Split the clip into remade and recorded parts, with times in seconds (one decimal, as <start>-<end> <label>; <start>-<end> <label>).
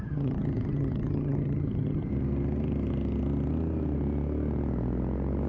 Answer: 0.0-2.1 remade; 2.1-5.5 recorded